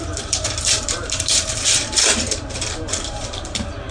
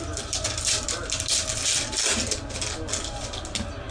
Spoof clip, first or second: first